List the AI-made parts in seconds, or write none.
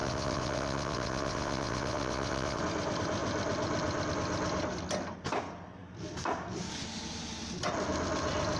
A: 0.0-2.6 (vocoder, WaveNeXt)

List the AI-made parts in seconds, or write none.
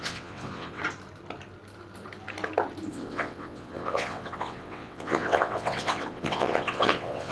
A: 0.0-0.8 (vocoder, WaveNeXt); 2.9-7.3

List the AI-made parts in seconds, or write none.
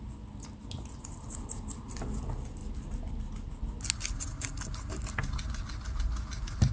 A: none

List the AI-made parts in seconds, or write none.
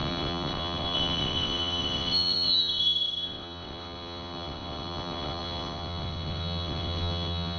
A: 0.0-7.6 (vocoder, WaveNeXt)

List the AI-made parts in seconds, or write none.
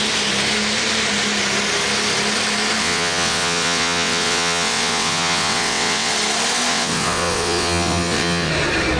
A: 2.8-6.1 (vocoder, WaveNeXt); 6.7-8.5